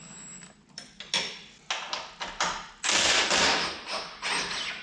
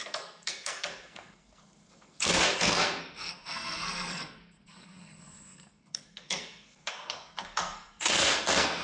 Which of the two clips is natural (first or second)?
first